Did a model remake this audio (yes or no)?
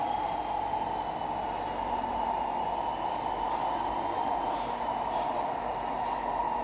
no